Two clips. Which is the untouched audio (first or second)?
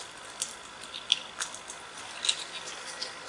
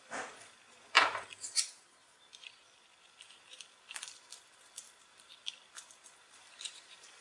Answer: first